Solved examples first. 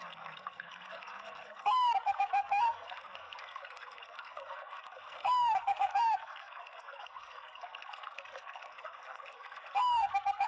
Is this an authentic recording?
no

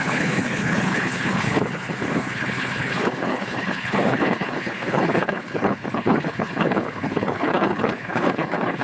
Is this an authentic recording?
no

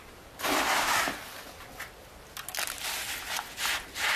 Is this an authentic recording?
yes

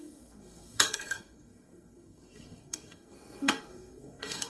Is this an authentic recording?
no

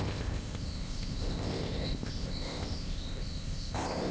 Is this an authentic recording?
no